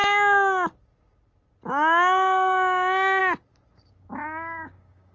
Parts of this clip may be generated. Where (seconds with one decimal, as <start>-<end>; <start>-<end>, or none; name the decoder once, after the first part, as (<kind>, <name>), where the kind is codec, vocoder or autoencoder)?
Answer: 1.7-3.2 (codec, DAC); 3.9-5.1